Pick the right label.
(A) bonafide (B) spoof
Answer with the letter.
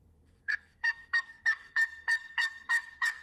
B